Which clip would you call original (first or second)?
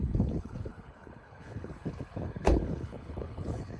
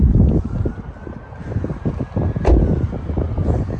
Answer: second